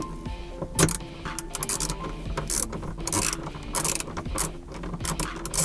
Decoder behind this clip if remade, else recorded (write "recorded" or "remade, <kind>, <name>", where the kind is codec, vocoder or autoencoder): recorded